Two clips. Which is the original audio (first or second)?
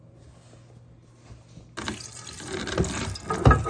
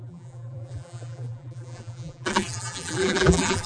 first